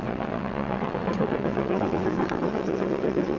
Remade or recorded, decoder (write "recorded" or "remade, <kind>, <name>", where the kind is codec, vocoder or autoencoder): remade, vocoder, WaveNeXt